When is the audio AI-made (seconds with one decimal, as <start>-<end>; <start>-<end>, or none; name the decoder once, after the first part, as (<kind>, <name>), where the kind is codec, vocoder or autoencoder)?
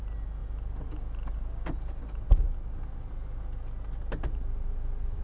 none